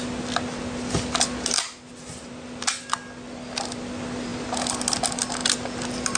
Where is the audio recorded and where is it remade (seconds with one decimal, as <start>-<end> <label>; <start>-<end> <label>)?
0.0-6.2 recorded